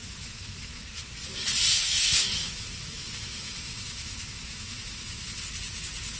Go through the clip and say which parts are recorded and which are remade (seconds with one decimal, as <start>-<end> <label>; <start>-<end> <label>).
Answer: 0.0-0.8 remade; 0.8-1.7 recorded; 1.7-5.4 remade; 5.4-6.2 recorded